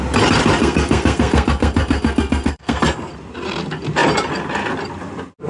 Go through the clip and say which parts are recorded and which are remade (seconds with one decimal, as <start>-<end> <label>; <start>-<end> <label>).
0.0-0.6 recorded; 0.6-3.1 remade; 3.1-5.5 recorded